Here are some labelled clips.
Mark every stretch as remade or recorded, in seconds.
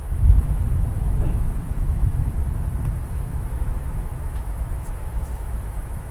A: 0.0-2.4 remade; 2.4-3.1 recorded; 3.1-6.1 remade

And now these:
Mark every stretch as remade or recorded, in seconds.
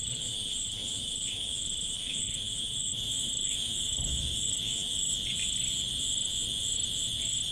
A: 0.0-5.1 remade; 5.1-7.5 recorded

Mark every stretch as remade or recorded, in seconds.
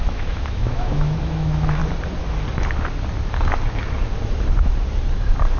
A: 0.0-1.8 remade; 1.8-5.6 recorded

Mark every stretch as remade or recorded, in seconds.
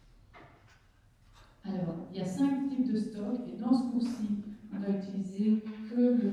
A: 0.0-5.3 recorded; 5.3-6.3 remade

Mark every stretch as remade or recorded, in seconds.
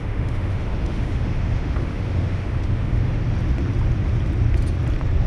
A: 0.0-3.2 remade; 3.2-5.3 recorded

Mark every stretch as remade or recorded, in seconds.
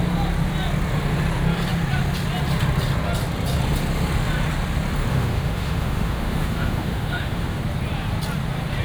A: 0.0-5.1 recorded; 5.1-7.6 remade; 7.6-8.8 recorded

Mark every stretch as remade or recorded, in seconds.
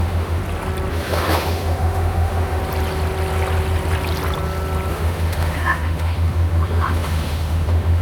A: 0.0-0.4 remade; 0.4-0.9 recorded; 0.9-2.6 remade; 2.6-4.9 recorded; 4.9-8.0 remade